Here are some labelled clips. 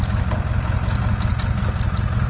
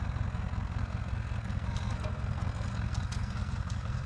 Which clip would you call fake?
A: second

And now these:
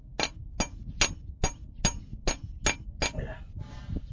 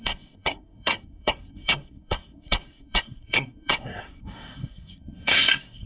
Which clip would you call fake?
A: second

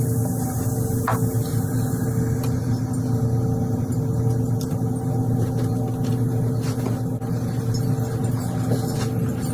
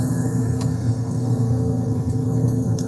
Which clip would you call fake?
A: second